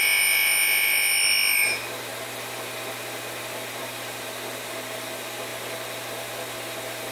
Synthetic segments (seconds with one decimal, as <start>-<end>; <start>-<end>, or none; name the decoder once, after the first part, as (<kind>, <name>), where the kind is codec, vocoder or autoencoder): none